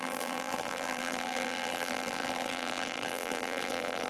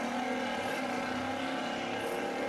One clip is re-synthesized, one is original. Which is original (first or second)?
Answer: second